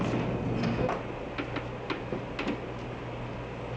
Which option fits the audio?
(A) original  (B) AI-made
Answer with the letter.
A